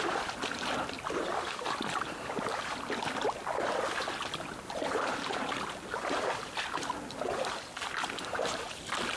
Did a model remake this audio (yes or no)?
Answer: no